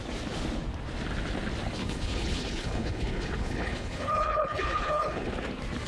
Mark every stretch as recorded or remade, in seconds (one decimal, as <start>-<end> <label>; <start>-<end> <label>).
0.0-1.8 recorded; 1.8-5.3 remade; 5.3-5.9 recorded